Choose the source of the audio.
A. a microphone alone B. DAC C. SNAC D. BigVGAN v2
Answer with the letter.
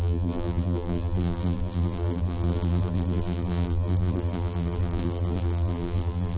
D